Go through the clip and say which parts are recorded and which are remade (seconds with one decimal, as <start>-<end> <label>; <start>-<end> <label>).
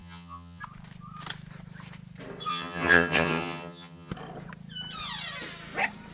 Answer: 0.0-0.6 remade; 0.6-2.5 recorded; 2.5-4.1 remade; 4.1-6.1 recorded